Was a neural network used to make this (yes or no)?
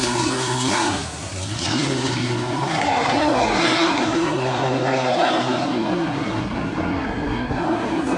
yes